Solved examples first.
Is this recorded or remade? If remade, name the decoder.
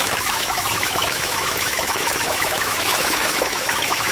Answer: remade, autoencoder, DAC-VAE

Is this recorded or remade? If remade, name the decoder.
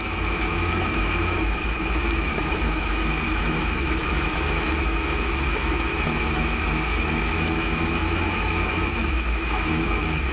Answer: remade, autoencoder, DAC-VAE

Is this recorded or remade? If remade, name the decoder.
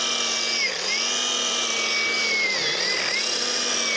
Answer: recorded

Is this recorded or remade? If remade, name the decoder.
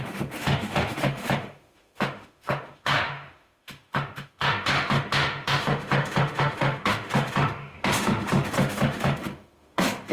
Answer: remade, autoencoder, DAC-VAE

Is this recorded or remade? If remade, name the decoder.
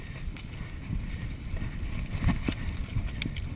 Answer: recorded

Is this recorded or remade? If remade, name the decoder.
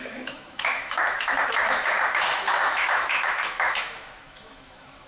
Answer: remade, autoencoder, DAC-VAE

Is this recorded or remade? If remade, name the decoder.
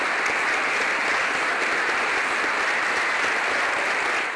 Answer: recorded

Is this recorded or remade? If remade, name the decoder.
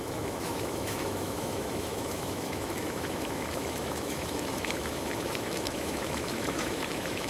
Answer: remade, autoencoder, DAC-VAE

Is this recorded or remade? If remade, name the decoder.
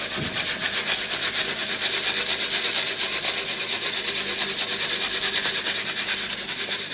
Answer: recorded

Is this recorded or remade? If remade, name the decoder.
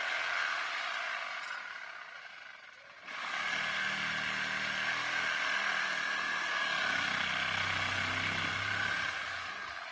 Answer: recorded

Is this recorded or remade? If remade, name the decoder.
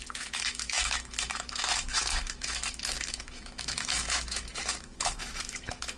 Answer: remade, autoencoder, DAC-VAE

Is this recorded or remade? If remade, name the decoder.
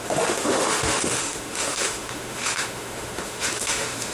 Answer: remade, autoencoder, DAC-VAE